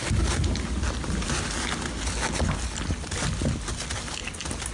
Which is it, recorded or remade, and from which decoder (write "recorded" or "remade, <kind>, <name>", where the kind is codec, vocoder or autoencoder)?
recorded